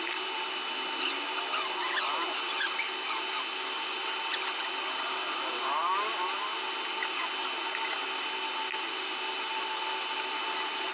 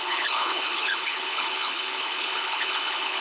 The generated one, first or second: second